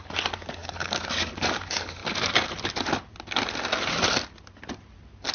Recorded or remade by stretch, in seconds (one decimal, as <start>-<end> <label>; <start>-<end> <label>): 0.0-2.0 remade; 2.0-5.3 recorded